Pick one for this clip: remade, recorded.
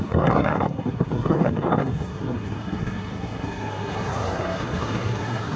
remade